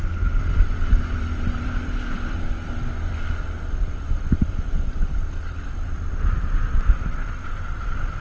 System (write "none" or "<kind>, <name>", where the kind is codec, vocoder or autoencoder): vocoder, BigVGAN v2